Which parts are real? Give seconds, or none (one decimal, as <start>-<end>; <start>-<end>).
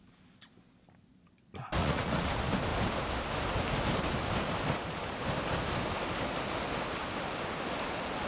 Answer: 0.0-1.8; 2.3-8.3